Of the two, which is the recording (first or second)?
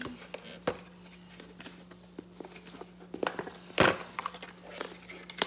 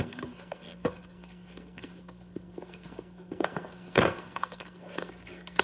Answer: first